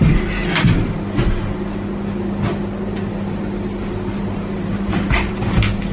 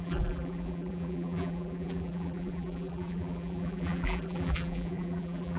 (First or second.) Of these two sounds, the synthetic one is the second